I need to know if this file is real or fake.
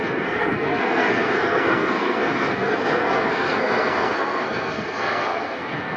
fake